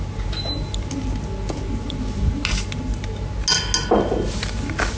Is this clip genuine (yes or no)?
yes